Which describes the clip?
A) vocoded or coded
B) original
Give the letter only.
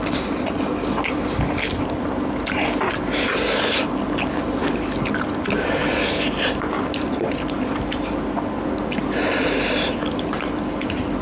B